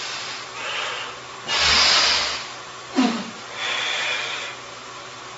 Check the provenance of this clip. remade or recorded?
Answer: remade